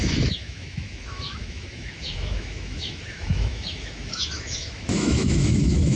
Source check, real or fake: fake